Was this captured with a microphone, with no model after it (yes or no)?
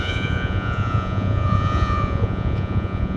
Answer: no